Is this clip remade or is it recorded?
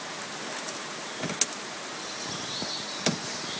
recorded